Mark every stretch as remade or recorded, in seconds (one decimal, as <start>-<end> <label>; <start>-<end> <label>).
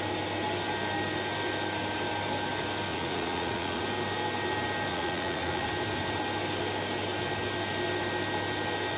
0.0-2.9 recorded; 2.9-3.8 remade; 3.8-4.9 recorded; 4.9-5.7 remade; 5.7-9.0 recorded